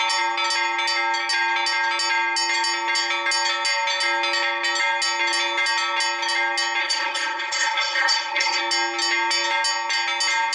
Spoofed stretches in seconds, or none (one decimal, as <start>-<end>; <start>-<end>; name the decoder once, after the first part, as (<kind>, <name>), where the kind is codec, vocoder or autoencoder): 6.8-8.6 (codec, SNAC)